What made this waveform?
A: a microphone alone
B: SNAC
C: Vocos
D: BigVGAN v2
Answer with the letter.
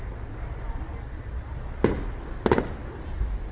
A